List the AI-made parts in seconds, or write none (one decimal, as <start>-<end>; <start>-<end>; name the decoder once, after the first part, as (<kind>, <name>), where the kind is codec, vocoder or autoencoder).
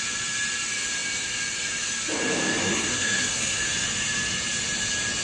2.6-3.6 (codec, SNAC)